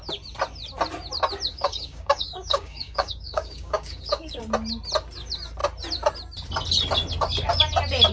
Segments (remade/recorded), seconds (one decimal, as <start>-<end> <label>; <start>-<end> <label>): 0.0-1.5 recorded; 1.5-4.4 remade; 4.4-8.1 recorded